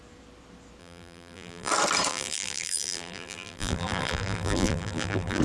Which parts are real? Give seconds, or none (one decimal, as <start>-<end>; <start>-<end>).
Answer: 0.0-0.8; 1.7-2.1